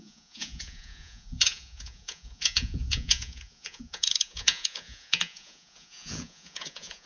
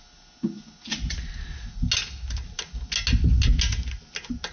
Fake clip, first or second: first